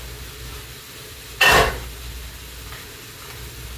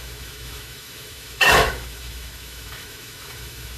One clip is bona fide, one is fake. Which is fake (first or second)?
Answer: second